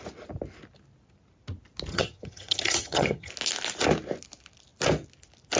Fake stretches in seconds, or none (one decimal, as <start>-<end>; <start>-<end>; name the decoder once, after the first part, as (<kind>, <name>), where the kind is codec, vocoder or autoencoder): 1.9-3.3 (vocoder, HiFi-GAN)